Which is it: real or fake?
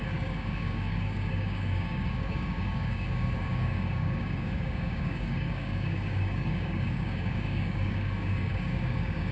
fake